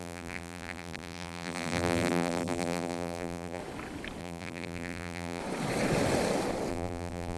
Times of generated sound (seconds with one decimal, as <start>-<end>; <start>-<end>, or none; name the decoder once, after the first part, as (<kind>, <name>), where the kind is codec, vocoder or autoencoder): 0.0-3.6 (vocoder, BigVGAN v2); 4.2-5.4; 6.7-7.4